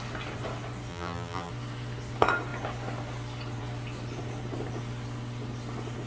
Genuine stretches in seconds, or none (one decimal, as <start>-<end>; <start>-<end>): 0.0-0.9; 1.5-6.1